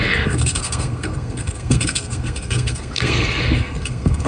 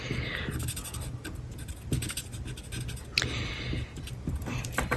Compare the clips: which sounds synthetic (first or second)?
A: first